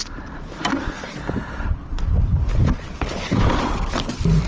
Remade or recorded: recorded